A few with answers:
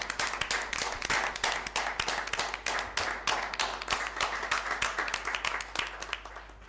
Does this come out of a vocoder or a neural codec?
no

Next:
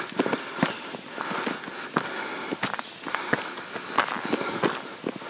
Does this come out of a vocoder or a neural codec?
no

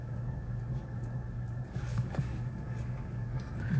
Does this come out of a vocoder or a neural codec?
yes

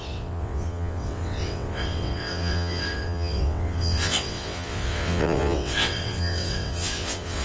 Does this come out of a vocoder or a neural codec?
yes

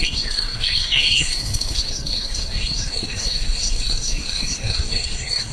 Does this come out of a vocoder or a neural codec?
yes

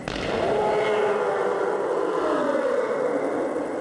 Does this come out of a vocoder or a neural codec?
no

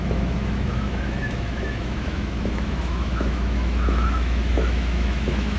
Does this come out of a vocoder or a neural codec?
yes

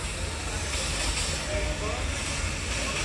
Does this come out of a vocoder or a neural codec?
no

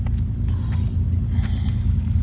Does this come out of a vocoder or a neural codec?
no